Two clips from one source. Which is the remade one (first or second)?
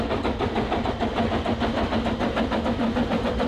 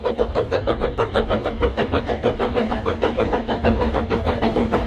second